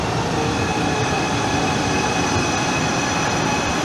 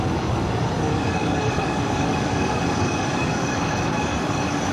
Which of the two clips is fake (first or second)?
second